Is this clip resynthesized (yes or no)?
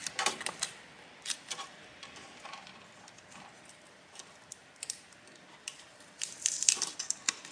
yes